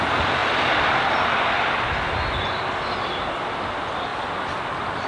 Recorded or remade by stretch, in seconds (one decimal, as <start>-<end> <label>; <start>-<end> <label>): 0.0-5.1 recorded